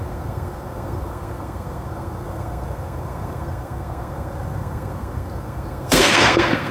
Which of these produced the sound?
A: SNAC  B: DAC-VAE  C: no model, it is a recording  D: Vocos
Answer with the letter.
A